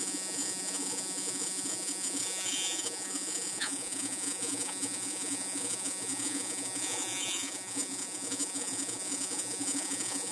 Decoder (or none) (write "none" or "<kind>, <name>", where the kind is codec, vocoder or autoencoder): vocoder, Vocos